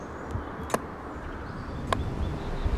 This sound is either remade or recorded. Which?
recorded